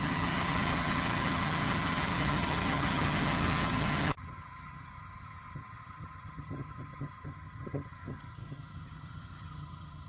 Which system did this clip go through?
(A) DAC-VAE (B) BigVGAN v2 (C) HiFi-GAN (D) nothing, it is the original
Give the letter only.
C